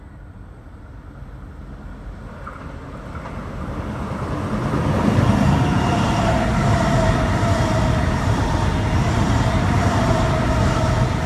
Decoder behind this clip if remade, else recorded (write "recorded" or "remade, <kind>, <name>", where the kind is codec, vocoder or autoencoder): recorded